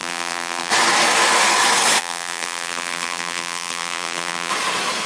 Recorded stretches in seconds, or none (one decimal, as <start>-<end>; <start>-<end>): 0.7-2.0; 4.5-5.1